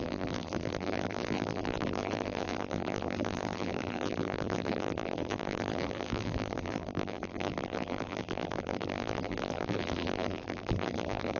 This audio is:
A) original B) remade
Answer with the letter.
B